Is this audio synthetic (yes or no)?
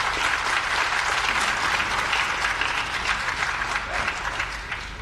no